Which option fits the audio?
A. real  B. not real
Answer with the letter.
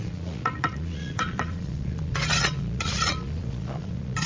B